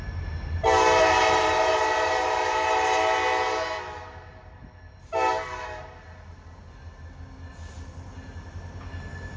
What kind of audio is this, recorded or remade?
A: recorded